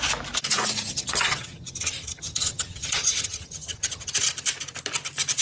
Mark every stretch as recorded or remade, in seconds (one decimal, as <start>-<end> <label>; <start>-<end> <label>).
0.0-0.9 recorded; 0.9-4.1 remade; 4.1-5.4 recorded